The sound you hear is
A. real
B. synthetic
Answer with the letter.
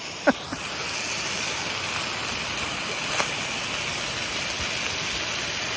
A